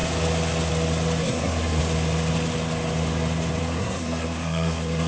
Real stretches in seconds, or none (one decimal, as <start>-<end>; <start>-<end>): 0.0-1.2; 1.8-3.6